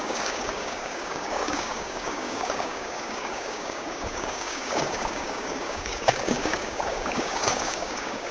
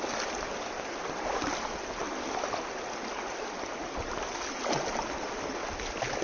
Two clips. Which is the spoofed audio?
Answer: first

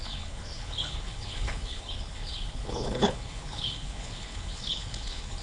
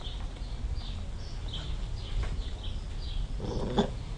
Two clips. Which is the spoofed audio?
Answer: first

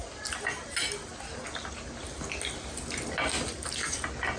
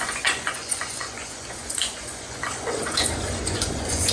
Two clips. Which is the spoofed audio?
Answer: second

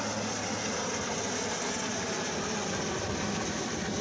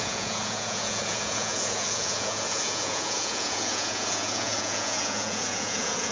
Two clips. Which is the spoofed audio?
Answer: second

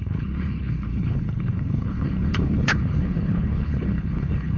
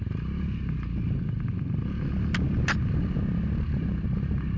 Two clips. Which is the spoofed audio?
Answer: first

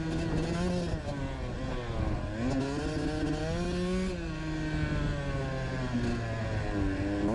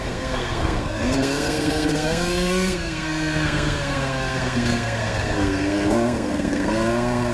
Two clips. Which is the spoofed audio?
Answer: second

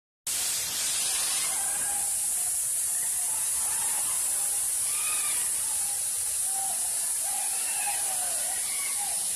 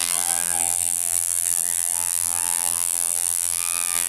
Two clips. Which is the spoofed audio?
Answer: second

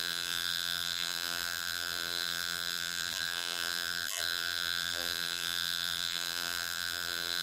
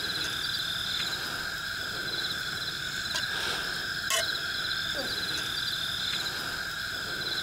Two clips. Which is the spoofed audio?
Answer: first